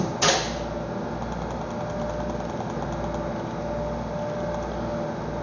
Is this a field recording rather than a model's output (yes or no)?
yes